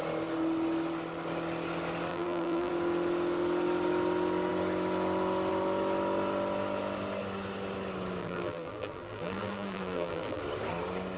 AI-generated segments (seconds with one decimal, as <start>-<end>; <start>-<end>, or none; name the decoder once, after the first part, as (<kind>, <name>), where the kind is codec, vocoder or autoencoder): 2.1-2.7 (vocoder, BigVGAN v2); 8.2-10.4